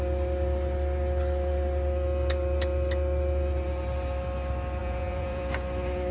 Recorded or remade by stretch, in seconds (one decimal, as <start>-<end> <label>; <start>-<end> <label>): 0.0-4.8 recorded; 4.8-5.4 remade; 5.4-6.1 recorded